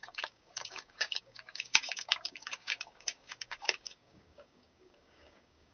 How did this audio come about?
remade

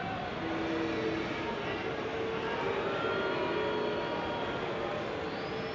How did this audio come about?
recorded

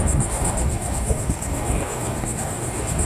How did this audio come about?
remade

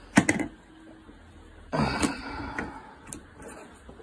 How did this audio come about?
recorded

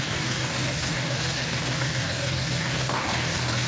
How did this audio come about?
remade